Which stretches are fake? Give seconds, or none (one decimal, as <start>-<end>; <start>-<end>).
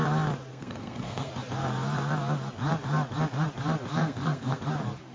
0.5-1.3; 4.0-4.6